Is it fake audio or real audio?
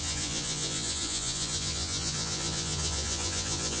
fake